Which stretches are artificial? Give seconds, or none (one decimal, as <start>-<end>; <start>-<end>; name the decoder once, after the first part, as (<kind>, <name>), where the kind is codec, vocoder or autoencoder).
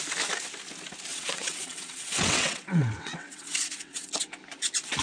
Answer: 1.1-4.1 (vocoder, WaveNeXt)